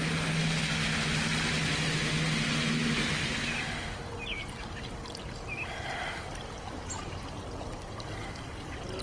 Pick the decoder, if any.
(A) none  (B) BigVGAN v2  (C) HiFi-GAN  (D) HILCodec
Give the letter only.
A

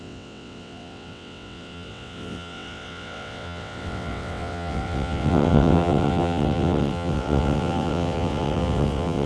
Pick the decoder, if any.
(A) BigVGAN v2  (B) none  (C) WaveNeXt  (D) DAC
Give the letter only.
C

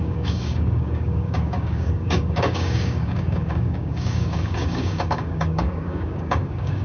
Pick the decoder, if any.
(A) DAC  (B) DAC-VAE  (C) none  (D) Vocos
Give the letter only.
A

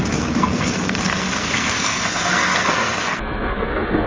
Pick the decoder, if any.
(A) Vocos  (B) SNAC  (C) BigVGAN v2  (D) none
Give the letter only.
B